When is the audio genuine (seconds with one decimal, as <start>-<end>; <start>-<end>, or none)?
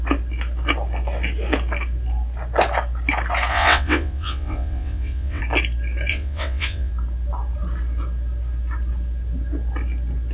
0.0-3.5; 5.4-6.1; 6.9-10.3